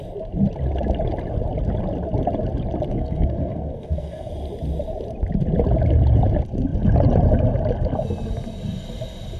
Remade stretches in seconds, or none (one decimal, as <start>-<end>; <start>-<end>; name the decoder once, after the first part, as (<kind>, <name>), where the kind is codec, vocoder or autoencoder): 2.9-4.3 (codec, SNAC)

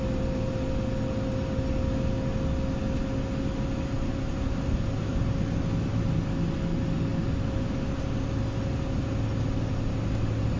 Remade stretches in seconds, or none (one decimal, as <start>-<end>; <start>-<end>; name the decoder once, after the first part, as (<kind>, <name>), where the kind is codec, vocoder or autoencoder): none

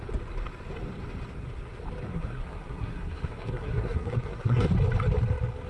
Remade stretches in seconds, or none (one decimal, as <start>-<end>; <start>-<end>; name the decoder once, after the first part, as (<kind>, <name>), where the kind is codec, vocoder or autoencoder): 2.1-4.7 (codec, SNAC)

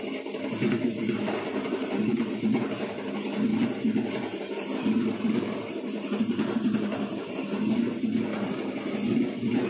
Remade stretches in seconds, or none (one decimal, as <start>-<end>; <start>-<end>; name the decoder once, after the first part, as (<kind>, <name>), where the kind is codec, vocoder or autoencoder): none

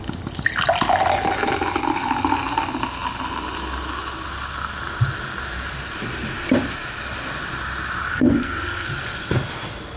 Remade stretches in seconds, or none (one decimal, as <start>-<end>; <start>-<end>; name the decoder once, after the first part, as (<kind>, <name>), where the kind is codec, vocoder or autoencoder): 8.1-8.9 (codec, SNAC)

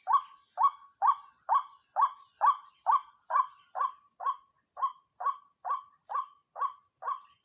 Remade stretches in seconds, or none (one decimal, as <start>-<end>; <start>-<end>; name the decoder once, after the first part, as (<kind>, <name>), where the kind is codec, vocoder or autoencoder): none

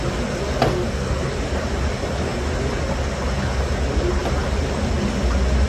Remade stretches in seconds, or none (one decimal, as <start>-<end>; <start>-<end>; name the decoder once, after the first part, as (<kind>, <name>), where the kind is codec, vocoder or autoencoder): 0.7-1.2 (codec, SNAC)

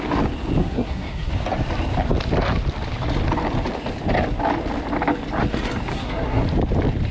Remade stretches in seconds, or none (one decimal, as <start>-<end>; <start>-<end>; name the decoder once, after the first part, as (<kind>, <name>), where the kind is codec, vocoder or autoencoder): 0.6-1.3 (codec, SNAC); 5.9-6.4